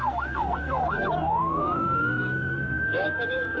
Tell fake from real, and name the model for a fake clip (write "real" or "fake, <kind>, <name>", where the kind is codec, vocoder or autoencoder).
fake, codec, SNAC